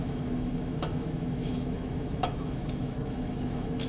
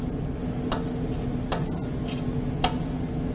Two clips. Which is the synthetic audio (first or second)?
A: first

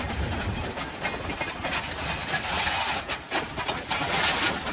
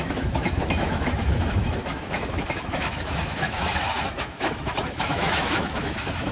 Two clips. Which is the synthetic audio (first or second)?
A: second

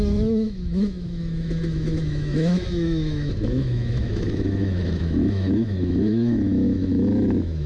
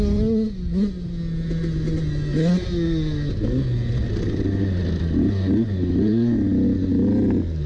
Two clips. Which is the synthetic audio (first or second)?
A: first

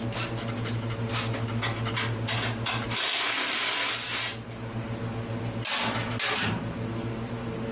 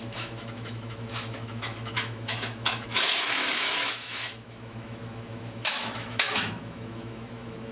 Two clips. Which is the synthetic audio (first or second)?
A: second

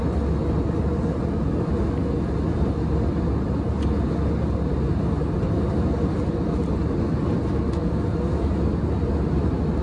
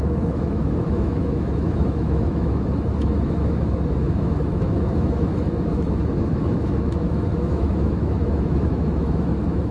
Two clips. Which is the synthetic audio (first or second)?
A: second